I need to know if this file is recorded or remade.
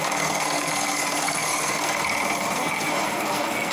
remade